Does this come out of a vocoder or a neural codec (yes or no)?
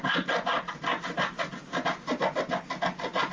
no